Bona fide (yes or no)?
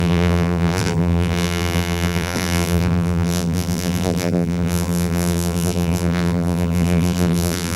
no